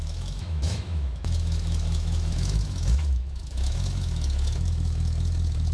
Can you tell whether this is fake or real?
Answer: fake